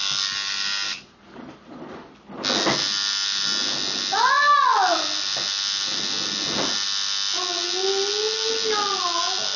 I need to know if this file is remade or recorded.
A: recorded